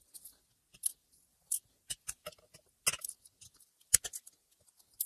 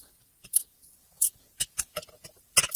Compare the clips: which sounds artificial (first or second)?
second